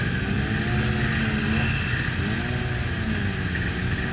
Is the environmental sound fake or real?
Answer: real